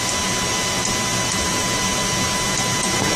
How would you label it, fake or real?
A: real